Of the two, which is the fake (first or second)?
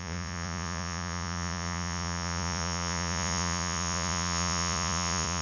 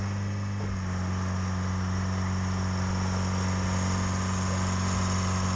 first